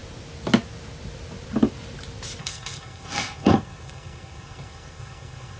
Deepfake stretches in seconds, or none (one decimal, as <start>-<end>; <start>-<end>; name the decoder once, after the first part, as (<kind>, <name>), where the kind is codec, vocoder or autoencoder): 2.4-5.6 (codec, SNAC)